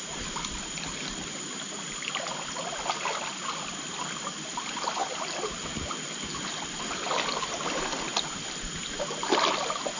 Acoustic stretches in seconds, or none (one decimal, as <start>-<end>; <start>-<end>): 0.0-10.0